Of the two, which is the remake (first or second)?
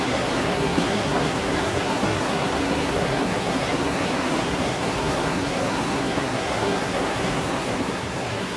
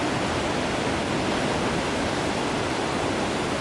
first